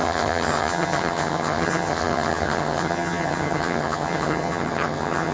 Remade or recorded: remade